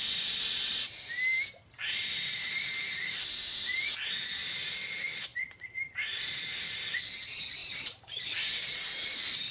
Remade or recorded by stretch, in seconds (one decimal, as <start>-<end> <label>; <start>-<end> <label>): 0.0-5.3 recorded; 5.3-6.3 remade; 6.3-7.6 recorded; 7.6-8.3 remade; 8.3-9.5 recorded